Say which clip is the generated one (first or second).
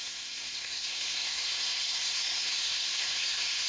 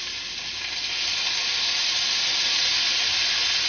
first